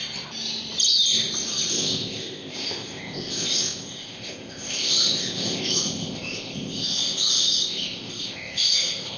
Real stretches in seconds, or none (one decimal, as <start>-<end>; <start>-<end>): 0.0-1.7